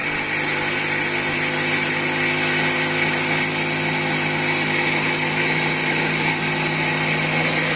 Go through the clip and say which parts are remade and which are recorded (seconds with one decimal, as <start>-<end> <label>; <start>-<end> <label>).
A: 0.0-7.8 recorded